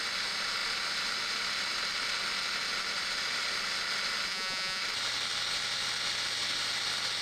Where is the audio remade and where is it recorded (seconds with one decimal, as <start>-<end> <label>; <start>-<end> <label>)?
0.0-4.3 recorded; 4.3-4.8 remade; 4.8-7.2 recorded